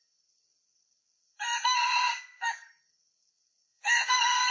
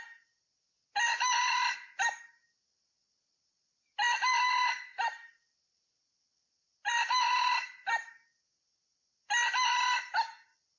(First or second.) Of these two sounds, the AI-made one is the first